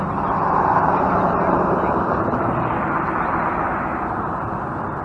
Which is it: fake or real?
real